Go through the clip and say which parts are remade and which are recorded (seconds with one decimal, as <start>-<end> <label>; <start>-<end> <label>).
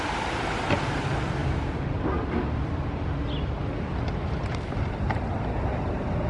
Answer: 0.0-6.3 recorded